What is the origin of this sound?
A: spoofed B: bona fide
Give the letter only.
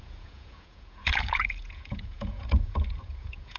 A